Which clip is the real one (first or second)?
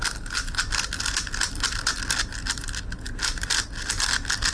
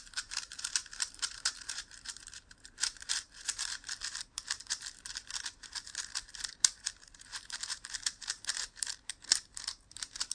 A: first